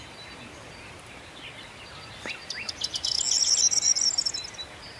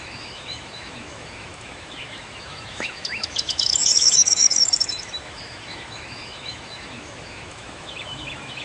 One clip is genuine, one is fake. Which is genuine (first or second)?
first